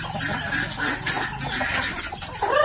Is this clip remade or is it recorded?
recorded